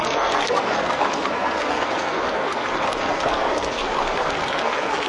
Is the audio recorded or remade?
remade